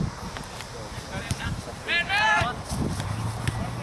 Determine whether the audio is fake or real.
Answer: fake